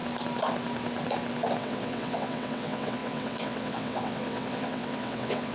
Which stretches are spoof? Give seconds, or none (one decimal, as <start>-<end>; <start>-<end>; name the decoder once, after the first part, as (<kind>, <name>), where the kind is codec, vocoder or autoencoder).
1.6-5.5 (vocoder, WaveNeXt)